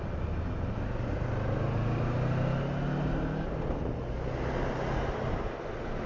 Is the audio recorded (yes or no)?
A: yes